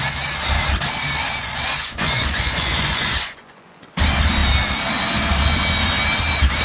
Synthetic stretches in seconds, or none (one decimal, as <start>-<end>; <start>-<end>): 1.2-3.8

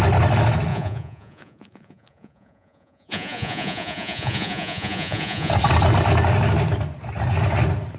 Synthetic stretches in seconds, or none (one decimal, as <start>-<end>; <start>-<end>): 0.7-5.5

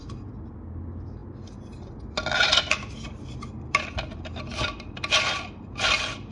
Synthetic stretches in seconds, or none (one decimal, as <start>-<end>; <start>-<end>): none